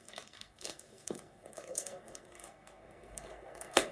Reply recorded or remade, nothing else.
remade